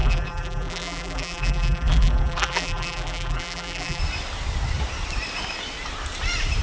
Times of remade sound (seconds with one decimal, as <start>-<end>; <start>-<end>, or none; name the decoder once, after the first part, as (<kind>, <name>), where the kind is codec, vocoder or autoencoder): 0.0-4.0 (vocoder, BigVGAN v2)